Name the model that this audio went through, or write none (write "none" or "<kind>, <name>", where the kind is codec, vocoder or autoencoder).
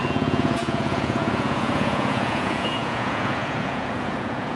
vocoder, Vocos